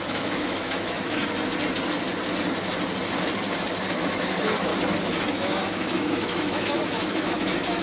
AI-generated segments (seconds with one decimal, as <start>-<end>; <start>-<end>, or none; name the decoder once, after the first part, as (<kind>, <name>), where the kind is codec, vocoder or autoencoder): 0.0-1.2 (autoencoder, DAC-VAE); 3.9-4.7; 5.3-7.8